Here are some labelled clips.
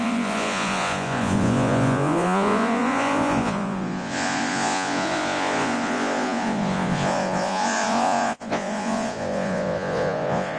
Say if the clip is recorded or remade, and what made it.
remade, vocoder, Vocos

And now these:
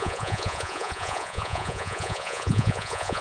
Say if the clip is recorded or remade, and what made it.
remade, vocoder, Vocos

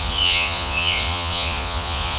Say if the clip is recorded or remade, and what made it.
remade, vocoder, Vocos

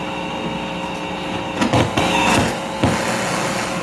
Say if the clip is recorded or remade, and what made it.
recorded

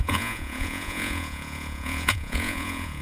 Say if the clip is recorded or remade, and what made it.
remade, vocoder, Vocos